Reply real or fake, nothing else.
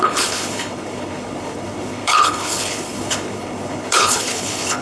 fake